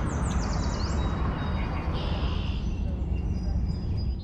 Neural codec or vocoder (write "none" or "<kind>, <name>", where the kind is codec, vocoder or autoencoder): none